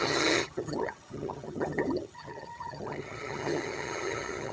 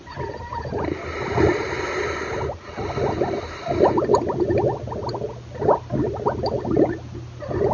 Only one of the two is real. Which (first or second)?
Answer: second